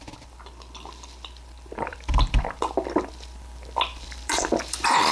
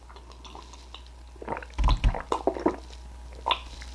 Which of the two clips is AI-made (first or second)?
first